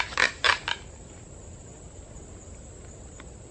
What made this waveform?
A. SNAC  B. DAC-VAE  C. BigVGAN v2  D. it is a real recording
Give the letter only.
D